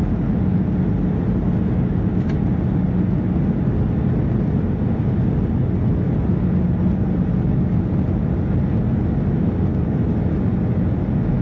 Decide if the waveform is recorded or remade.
recorded